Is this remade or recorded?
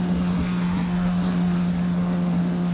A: remade